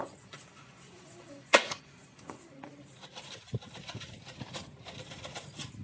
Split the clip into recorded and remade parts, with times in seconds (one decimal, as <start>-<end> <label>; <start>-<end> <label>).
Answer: 0.0-2.7 remade; 2.7-5.8 recorded